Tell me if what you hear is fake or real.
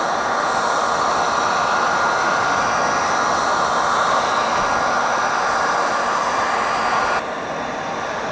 real